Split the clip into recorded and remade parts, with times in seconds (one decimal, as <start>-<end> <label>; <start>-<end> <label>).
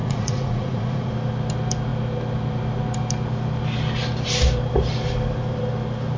0.0-1.1 remade; 1.1-6.2 recorded